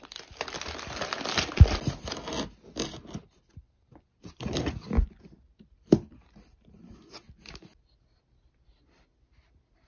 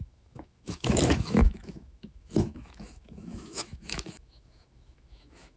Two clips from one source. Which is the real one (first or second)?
first